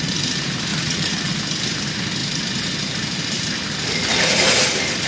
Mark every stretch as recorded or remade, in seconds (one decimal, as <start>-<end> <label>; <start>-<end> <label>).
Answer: 0.0-0.7 recorded; 0.7-1.3 remade; 1.3-5.1 recorded